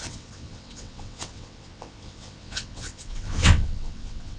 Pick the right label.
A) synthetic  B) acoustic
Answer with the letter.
A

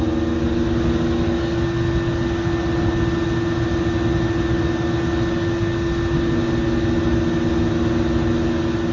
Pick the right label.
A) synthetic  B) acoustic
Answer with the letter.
B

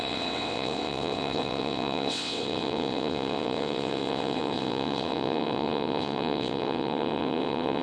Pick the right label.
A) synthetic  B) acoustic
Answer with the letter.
A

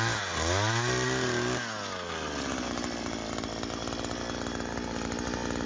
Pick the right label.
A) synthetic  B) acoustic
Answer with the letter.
B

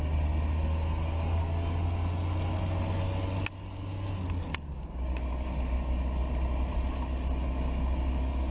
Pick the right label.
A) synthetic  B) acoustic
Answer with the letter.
B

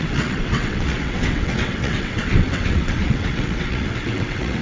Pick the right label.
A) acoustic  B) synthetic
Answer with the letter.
B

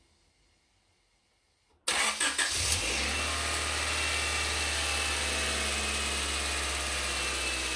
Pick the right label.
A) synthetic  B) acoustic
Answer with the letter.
B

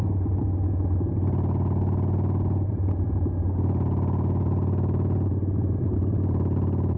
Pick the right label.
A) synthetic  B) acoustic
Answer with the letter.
B